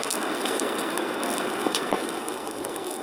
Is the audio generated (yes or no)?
yes